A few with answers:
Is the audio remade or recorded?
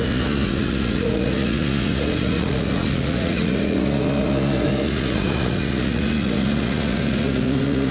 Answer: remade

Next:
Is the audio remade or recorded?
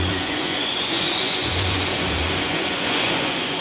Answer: remade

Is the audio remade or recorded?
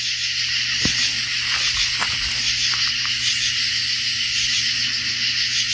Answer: recorded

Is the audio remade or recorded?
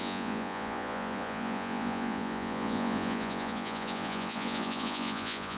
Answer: remade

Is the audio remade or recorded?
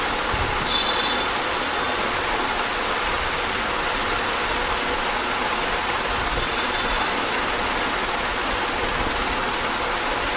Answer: recorded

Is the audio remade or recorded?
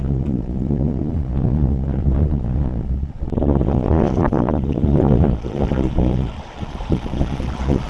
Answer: remade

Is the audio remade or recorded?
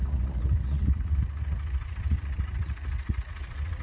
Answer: remade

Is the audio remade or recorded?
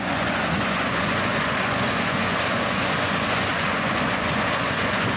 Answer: remade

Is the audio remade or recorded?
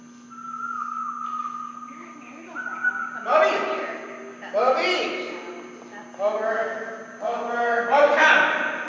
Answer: recorded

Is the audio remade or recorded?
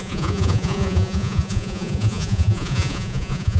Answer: remade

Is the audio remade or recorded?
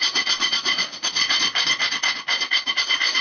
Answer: remade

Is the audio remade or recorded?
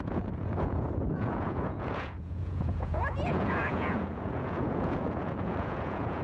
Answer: remade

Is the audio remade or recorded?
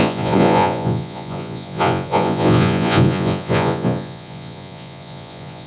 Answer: remade